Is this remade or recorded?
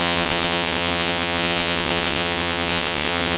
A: remade